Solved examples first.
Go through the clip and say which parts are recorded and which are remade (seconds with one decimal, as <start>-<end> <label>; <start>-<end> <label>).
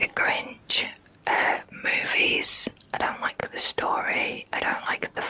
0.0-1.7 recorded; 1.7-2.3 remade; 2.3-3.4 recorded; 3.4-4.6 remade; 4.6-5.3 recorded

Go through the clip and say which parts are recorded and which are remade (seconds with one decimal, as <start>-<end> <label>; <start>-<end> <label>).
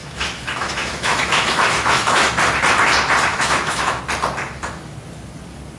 0.0-2.3 remade; 2.3-3.3 recorded; 3.3-4.0 remade; 4.0-5.8 recorded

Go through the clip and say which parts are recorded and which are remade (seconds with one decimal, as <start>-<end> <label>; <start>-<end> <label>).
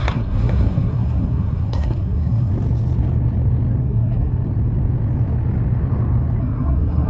0.0-2.5 remade; 2.5-3.8 recorded; 3.8-4.3 remade; 4.3-6.4 recorded; 6.4-7.1 remade